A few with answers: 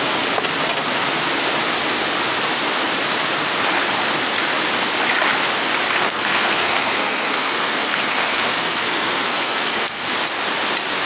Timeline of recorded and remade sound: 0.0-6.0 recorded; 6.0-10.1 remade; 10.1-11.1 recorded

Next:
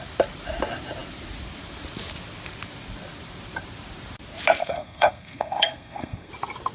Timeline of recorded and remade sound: 0.0-4.6 recorded; 4.6-6.3 remade; 6.3-6.7 recorded

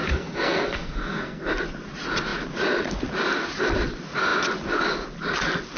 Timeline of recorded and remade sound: 0.0-1.5 remade; 1.5-5.8 recorded

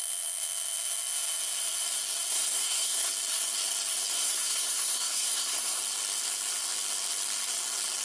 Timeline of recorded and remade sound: 0.0-2.3 recorded; 2.3-3.1 remade; 3.1-4.1 recorded; 4.1-5.8 remade; 5.8-8.0 recorded

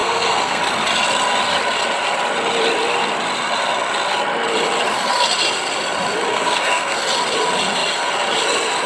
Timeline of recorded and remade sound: 0.0-0.6 remade; 0.6-6.3 recorded; 6.3-7.0 remade; 7.0-8.9 recorded